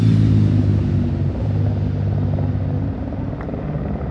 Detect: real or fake real